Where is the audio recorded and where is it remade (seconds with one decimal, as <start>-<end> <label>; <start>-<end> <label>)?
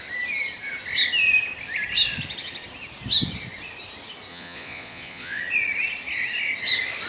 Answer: 0.0-4.3 recorded; 4.3-5.4 remade; 5.4-7.1 recorded